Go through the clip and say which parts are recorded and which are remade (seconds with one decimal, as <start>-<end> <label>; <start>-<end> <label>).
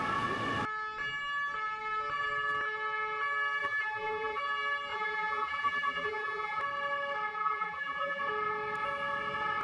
0.0-3.6 recorded; 3.6-4.4 remade; 4.4-4.9 recorded; 4.9-6.6 remade; 6.6-7.3 recorded; 7.3-8.2 remade; 8.2-9.6 recorded